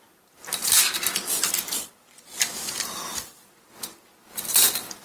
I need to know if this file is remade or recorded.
recorded